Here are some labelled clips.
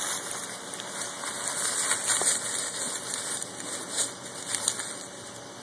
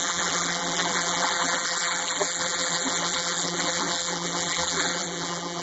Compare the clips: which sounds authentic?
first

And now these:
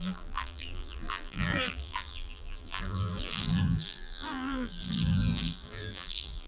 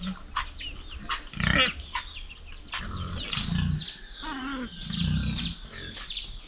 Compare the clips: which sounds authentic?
second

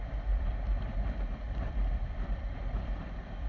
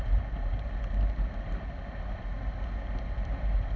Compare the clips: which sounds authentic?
second